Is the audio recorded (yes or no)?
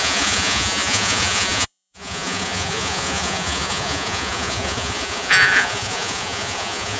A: no